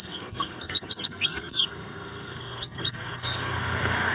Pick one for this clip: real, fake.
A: fake